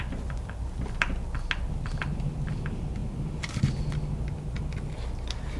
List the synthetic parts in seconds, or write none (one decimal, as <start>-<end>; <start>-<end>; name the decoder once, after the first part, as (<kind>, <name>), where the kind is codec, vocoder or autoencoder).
none